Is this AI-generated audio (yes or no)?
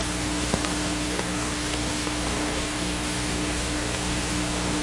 yes